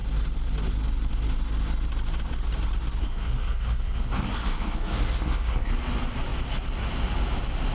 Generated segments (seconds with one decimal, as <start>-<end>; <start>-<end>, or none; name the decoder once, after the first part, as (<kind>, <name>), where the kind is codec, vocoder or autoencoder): 3.0-5.7 (codec, SNAC)